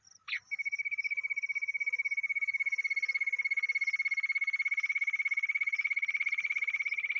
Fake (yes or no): no